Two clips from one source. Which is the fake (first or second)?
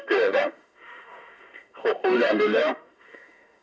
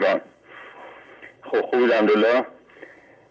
first